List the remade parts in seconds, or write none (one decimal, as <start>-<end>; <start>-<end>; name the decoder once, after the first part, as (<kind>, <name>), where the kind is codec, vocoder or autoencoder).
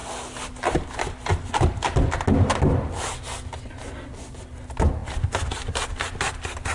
none